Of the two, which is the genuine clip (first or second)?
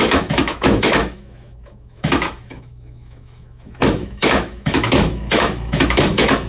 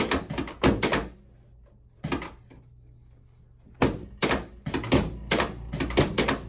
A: second